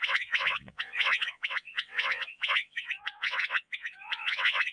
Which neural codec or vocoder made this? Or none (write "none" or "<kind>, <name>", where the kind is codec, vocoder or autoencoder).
vocoder, WaveNeXt